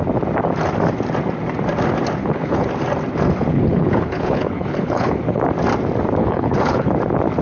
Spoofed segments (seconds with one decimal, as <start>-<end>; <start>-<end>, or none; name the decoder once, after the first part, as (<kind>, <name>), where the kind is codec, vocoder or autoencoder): 2.2-2.7 (codec, HILCodec); 3.5-5.4; 6.2-6.9